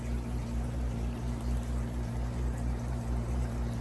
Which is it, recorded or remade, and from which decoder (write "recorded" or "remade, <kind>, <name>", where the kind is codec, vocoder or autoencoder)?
remade, vocoder, BigVGAN v2